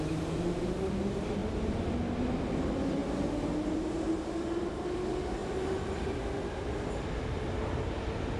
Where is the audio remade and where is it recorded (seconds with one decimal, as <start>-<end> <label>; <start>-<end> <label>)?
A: 0.0-8.4 recorded